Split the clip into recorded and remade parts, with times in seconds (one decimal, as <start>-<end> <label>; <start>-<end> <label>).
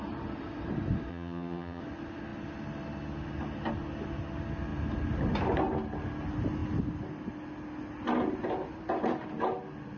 0.0-1.1 recorded; 1.1-1.8 remade; 1.8-10.0 recorded